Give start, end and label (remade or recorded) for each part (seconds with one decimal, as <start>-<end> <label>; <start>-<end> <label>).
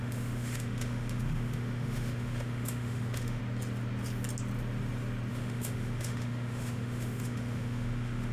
0.0-3.4 remade; 3.4-5.3 recorded; 5.3-8.3 remade